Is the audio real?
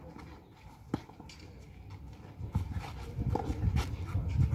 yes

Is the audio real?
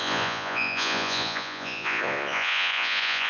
no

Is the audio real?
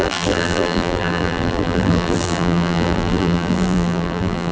no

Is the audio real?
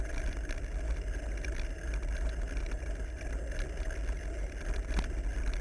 yes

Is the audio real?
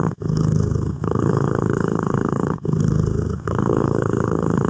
no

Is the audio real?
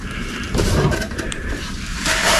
no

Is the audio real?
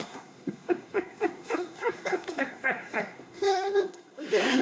no